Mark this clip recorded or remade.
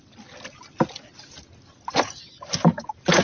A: recorded